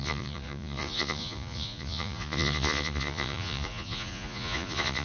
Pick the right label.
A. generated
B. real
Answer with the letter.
A